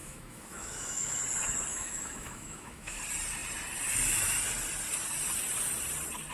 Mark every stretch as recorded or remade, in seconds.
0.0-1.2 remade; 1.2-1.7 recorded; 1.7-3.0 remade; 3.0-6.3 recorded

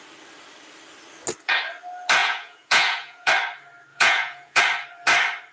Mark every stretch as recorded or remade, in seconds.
0.0-2.2 recorded; 2.2-3.3 remade; 3.3-3.9 recorded; 3.9-4.6 remade; 4.6-5.5 recorded

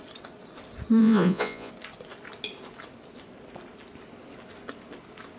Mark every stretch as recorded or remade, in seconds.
0.0-1.0 recorded; 1.0-1.7 remade; 1.7-5.4 recorded